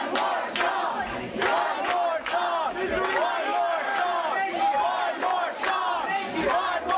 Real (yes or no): yes